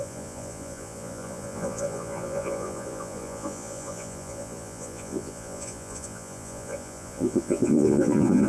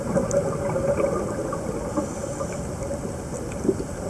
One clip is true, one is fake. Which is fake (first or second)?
first